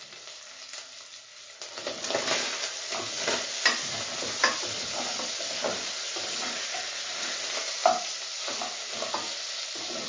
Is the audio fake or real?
real